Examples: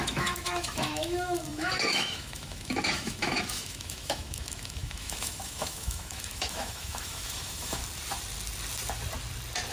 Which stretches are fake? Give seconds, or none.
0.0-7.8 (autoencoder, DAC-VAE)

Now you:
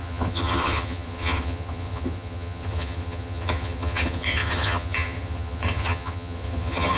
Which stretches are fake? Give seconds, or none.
0.0-7.0 (vocoder, HiFi-GAN)